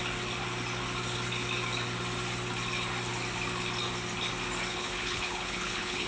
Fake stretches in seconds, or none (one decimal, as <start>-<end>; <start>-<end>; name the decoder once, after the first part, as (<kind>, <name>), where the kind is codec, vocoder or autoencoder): 4.7-6.1 (codec, HILCodec)